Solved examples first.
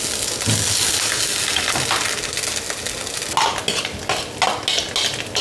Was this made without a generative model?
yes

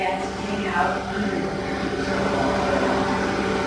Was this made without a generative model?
yes